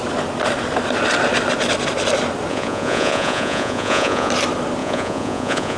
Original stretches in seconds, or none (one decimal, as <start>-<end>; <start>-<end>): 0.0-2.5; 4.3-4.8